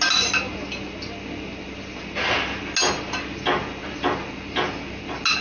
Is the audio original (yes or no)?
yes